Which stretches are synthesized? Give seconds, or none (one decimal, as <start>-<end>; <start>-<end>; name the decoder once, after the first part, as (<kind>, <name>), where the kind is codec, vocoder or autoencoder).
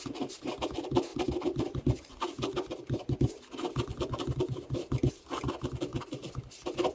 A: 1.1-5.1 (vocoder, BigVGAN v2); 5.9-6.9